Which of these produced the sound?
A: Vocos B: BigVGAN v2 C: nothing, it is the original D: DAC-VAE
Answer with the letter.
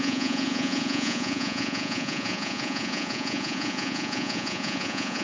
A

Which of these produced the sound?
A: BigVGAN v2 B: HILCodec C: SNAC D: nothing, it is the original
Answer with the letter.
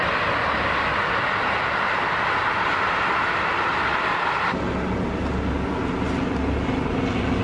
D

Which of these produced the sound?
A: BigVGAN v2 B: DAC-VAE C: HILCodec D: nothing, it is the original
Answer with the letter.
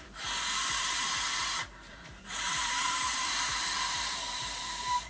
A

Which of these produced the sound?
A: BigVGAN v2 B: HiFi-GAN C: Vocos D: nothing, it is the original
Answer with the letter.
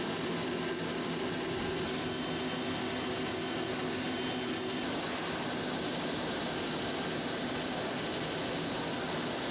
D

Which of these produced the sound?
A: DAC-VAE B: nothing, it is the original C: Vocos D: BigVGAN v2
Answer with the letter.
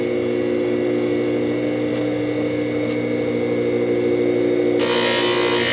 B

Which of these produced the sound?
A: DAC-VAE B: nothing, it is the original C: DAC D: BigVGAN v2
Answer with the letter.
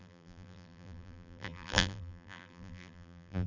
D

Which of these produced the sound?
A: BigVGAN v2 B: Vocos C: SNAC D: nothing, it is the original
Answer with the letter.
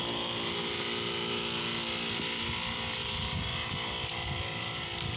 D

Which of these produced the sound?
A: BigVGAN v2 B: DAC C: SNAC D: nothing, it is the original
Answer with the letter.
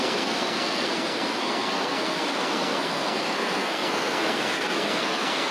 C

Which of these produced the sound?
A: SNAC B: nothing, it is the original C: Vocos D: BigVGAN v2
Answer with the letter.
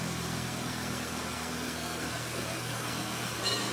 A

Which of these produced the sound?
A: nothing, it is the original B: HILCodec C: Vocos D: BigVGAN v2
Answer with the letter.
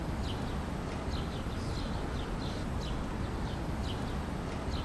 A